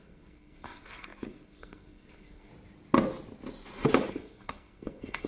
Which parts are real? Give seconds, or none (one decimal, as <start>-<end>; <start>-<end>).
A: 2.5-4.1